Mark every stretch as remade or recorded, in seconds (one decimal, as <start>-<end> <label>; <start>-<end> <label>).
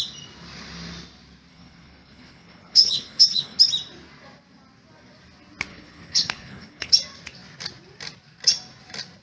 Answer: 0.0-1.5 recorded; 1.5-3.6 remade; 3.6-5.7 recorded; 5.7-6.9 remade; 6.9-9.2 recorded